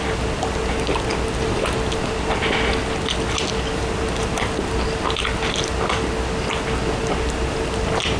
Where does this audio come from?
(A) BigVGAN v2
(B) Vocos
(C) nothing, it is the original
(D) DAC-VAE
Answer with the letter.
C